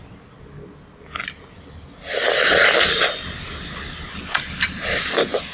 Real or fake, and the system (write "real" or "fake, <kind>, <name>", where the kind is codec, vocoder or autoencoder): real